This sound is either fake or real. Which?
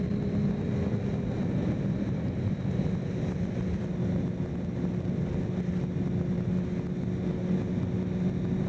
real